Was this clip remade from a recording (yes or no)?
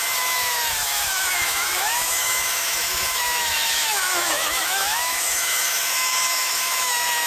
yes